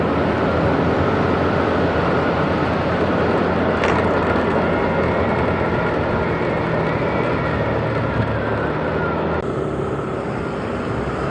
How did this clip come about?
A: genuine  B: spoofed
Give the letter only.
A